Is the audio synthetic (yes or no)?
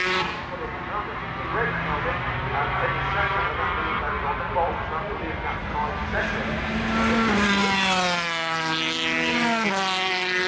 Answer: no